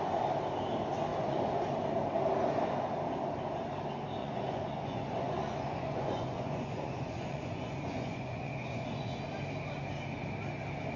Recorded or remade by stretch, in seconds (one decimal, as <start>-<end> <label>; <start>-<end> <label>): 0.0-1.1 recorded; 1.1-1.6 remade; 1.6-4.2 recorded; 4.2-9.2 remade; 9.2-11.0 recorded

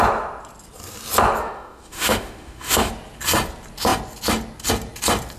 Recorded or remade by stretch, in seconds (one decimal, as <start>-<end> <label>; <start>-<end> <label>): 0.0-1.4 recorded; 1.4-2.9 remade; 2.9-5.4 recorded

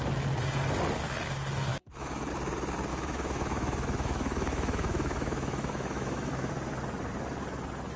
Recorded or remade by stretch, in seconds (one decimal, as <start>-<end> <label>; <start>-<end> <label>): 0.0-1.7 recorded; 1.7-2.3 remade; 2.3-2.9 recorded; 2.9-6.5 remade; 6.5-8.0 recorded

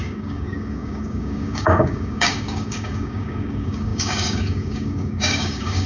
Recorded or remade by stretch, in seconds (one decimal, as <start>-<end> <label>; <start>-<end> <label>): 0.0-5.9 remade

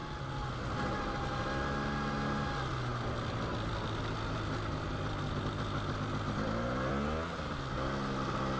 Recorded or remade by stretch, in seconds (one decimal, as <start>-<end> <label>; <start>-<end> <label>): 0.0-8.6 recorded

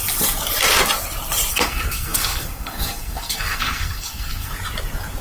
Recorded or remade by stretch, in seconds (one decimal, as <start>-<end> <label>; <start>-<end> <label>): 0.0-1.5 recorded; 1.5-4.5 remade; 4.5-5.2 recorded